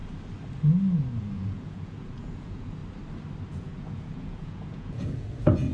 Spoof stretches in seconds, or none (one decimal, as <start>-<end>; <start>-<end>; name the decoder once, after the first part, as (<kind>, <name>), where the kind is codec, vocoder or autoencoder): 1.2-2.8 (vocoder, Vocos); 3.5-5.7